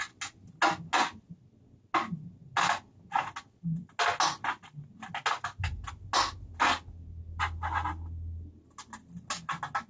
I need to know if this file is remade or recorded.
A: recorded